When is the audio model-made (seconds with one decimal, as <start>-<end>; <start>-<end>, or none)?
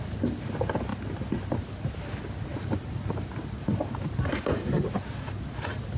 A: none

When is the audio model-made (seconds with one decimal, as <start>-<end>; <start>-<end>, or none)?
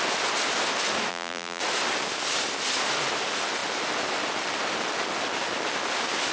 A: 1.1-1.6